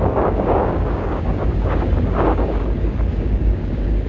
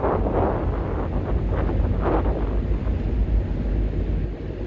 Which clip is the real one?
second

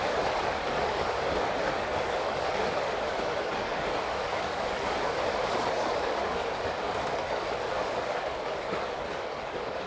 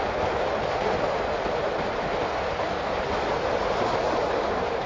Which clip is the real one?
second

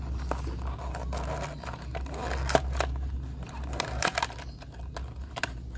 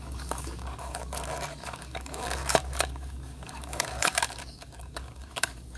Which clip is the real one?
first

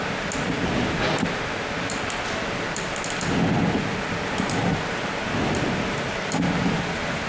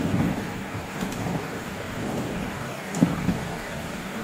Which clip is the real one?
first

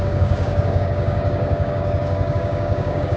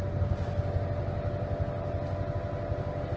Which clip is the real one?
second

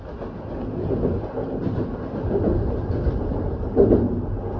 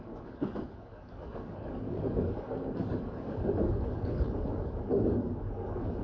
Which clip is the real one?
first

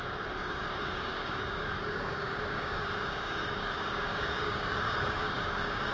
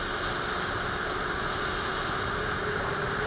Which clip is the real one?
second